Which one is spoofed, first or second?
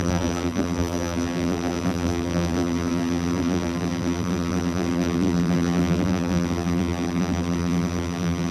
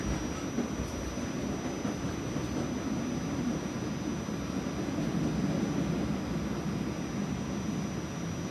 first